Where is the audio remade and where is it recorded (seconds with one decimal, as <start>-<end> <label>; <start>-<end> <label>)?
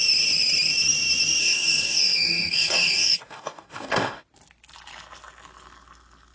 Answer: 0.0-1.4 recorded; 1.4-4.2 remade; 4.2-6.3 recorded